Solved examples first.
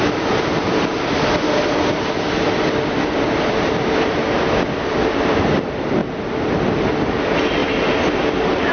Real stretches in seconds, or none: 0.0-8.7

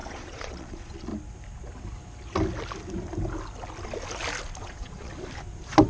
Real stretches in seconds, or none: 1.1-4.6; 5.1-5.9

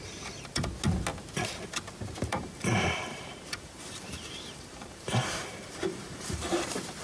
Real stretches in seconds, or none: 0.0-2.3; 6.5-7.0

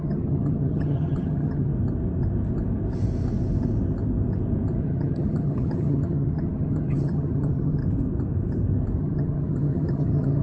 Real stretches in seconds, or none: 1.7-4.8; 7.8-9.0

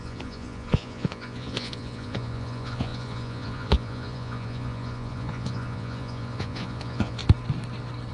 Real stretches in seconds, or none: 7.2-8.1

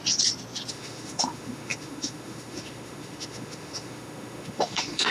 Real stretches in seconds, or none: 0.0-0.7

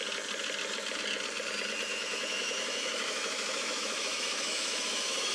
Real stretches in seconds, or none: 0.0-1.9